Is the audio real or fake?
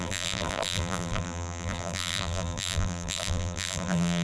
fake